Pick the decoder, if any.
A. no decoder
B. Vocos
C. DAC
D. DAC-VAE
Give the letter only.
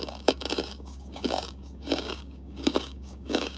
C